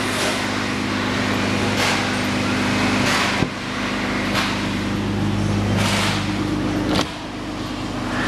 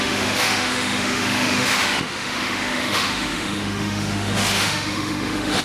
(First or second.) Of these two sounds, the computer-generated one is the second